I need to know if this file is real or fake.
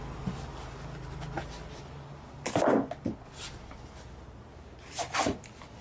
real